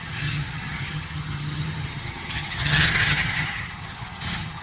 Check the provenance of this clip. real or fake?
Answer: fake